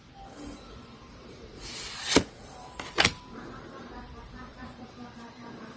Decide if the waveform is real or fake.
fake